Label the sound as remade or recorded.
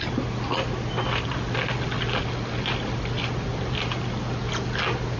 recorded